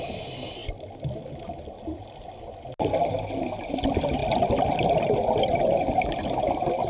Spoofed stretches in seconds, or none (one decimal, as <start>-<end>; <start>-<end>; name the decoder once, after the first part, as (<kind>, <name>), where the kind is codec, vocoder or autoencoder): none